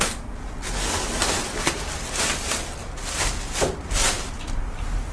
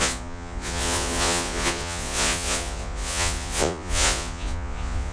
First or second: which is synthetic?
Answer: second